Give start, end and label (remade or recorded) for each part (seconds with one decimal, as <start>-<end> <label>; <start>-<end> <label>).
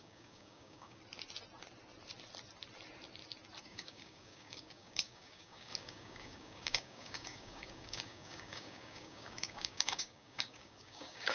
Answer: 0.0-1.0 remade; 1.0-3.6 recorded; 3.6-11.3 remade